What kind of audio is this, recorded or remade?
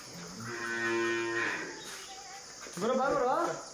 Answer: recorded